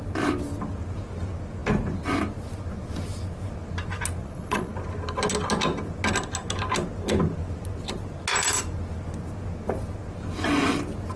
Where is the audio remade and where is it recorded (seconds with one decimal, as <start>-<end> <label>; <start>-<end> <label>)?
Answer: 0.0-4.2 recorded; 4.2-4.7 remade; 4.7-11.2 recorded